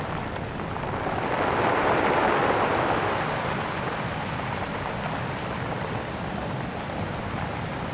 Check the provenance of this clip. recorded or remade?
recorded